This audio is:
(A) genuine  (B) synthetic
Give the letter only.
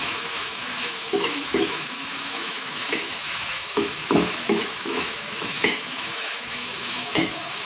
B